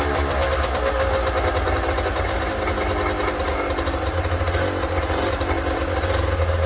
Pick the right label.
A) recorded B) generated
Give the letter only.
A